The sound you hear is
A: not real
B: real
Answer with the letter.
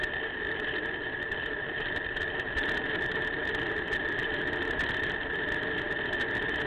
B